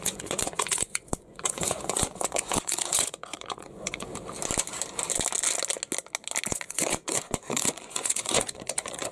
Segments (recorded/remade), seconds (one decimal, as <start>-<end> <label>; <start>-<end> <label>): 0.0-4.1 remade; 4.1-6.5 recorded; 6.5-9.1 remade